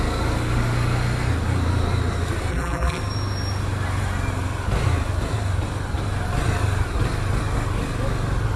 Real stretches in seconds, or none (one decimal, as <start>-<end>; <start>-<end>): 0.0-2.5; 3.0-8.6